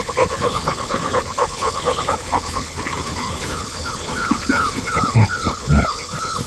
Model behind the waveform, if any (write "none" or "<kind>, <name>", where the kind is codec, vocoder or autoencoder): codec, HILCodec